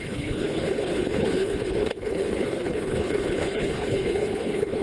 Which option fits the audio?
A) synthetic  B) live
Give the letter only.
A